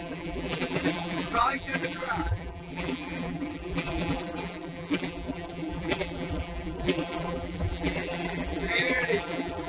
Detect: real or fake fake